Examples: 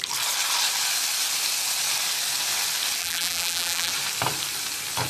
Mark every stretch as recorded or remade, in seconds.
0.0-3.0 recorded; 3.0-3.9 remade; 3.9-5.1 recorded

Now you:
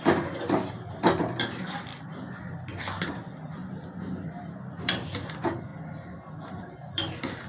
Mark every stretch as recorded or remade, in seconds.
0.0-7.5 remade